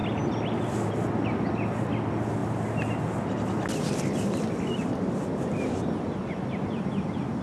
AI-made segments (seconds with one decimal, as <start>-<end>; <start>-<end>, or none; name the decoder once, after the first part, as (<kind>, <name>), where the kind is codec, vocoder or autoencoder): none